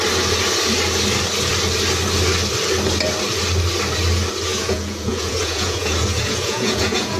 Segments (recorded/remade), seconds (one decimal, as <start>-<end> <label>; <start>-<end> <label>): 0.0-4.5 recorded; 4.5-7.2 remade